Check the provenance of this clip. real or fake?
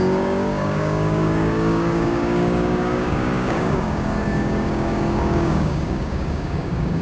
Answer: fake